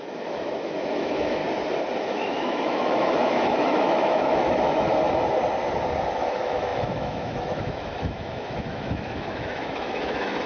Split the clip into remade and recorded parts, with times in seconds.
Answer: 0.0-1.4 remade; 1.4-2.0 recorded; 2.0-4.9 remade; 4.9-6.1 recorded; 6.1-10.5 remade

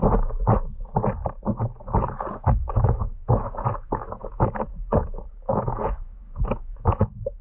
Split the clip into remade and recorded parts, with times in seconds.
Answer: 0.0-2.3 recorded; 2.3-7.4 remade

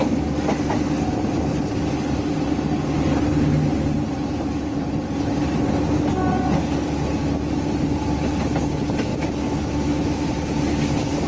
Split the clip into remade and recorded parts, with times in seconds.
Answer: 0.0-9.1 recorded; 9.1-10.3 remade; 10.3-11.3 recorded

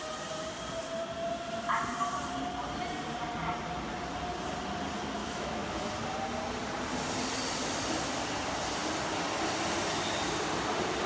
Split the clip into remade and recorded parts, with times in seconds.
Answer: 0.0-5.2 recorded; 5.2-5.9 remade; 5.9-11.1 recorded

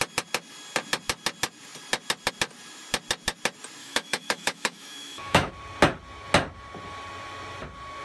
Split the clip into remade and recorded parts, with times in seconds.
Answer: 0.0-3.8 recorded; 3.8-5.5 remade; 5.5-8.0 recorded

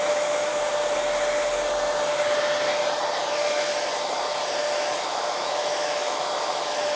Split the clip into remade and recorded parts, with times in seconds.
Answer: 0.0-0.5 remade; 0.5-3.3 recorded; 3.3-3.7 remade; 3.7-4.6 recorded; 4.6-7.0 remade

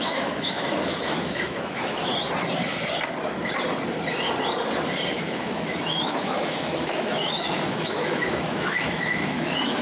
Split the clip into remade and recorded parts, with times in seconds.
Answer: 0.0-2.1 remade; 2.1-5.1 recorded; 5.1-9.8 remade

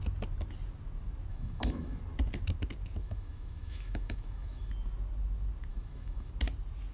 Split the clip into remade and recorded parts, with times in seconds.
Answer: 0.0-1.3 recorded; 1.3-2.0 remade; 2.0-3.0 recorded; 3.0-4.7 remade; 4.7-5.7 recorded; 5.7-6.3 remade; 6.3-6.9 recorded